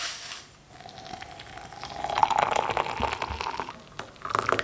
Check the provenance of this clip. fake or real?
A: real